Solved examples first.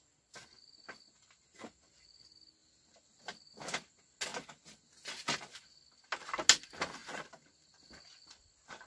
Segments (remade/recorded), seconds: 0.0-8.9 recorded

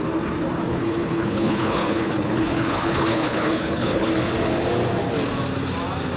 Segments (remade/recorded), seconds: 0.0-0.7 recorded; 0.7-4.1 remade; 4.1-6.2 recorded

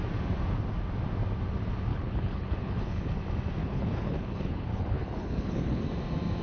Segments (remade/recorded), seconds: 0.0-1.9 recorded; 1.9-3.1 remade; 3.1-3.6 recorded; 3.6-5.8 remade; 5.8-6.4 recorded

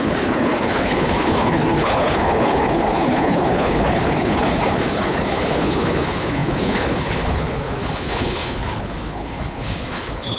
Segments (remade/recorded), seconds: 0.0-10.4 remade